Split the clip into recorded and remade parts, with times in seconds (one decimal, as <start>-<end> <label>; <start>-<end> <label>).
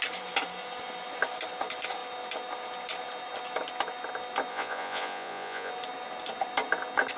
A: 0.0-4.5 recorded; 4.5-5.7 remade; 5.7-7.2 recorded